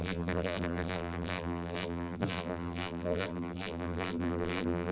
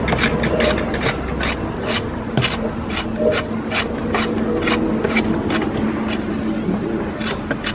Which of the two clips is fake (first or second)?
first